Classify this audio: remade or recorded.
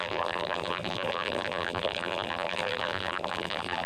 remade